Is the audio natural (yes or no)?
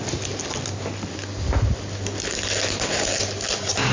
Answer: yes